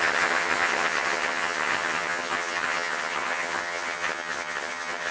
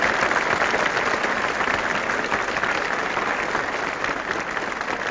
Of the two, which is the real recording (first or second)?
second